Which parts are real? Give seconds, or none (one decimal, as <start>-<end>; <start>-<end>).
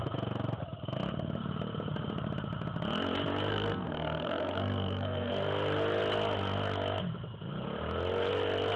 0.0-3.5; 5.3-8.8